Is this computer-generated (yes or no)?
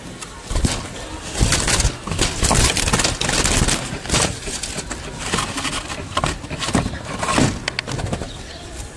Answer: no